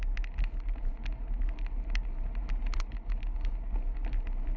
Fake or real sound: real